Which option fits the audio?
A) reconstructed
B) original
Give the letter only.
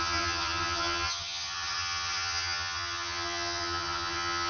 A